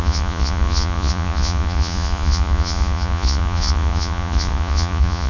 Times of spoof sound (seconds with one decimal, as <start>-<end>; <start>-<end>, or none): 0.0-5.3